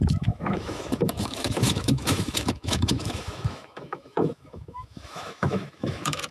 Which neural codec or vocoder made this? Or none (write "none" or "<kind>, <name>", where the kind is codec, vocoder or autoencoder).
autoencoder, DAC-VAE